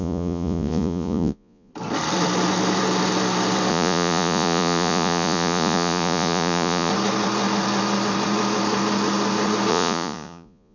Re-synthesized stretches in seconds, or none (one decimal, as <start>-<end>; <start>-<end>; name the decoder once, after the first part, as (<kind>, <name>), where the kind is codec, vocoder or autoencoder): 0.0-1.7 (vocoder, Vocos); 3.7-6.9; 9.7-10.7